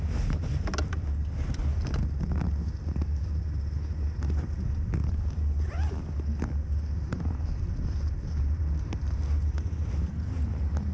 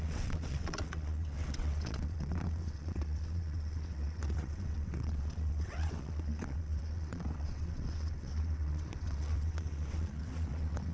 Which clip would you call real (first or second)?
first